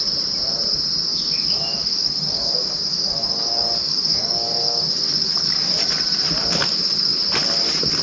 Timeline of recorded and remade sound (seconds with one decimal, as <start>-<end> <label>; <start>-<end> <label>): 0.0-1.1 recorded; 1.1-5.9 remade; 5.9-8.0 recorded